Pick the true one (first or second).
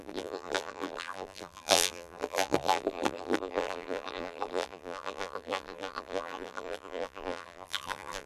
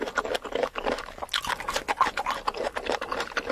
second